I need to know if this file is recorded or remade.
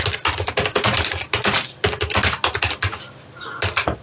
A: recorded